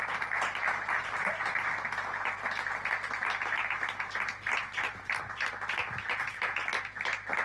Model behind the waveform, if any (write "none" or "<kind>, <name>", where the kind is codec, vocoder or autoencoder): none